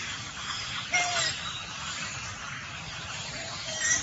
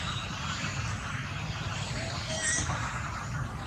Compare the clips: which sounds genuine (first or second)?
second